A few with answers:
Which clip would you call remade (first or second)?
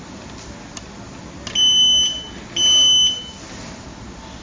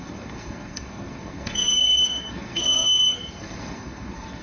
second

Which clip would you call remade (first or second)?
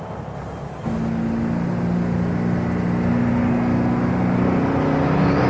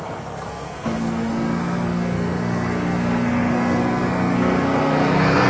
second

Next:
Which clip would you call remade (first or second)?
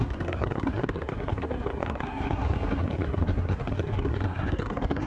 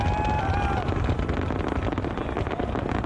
first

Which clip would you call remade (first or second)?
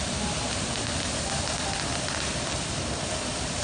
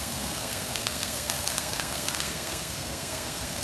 second